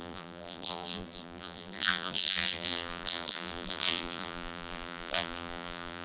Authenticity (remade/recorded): remade